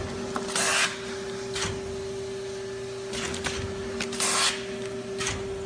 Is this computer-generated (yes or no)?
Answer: no